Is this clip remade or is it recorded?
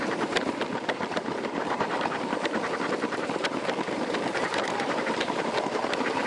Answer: remade